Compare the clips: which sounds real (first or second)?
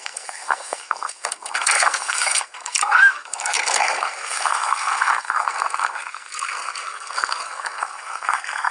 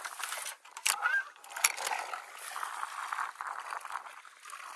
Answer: second